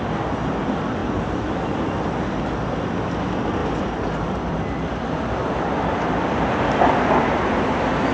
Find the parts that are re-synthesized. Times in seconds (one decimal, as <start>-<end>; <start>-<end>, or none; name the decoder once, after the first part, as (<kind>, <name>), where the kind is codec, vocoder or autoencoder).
1.0-1.6 (vocoder, BigVGAN v2); 3.6-6.6